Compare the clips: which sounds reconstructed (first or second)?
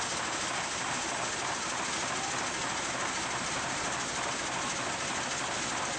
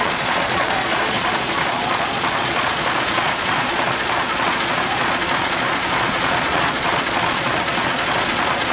second